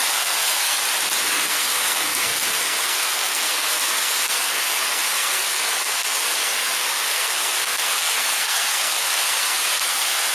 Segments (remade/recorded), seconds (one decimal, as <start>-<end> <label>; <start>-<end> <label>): 0.0-0.8 remade; 0.8-1.3 recorded; 1.3-10.3 remade